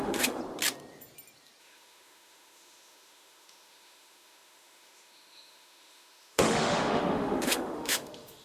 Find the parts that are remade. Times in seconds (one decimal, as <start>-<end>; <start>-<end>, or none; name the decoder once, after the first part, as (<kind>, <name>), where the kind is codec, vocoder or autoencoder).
0.0-0.4 (autoencoder, DAC-VAE); 1.6-8.4